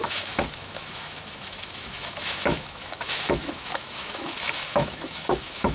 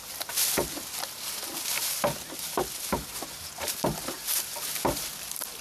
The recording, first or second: second